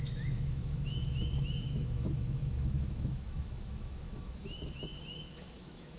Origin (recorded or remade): remade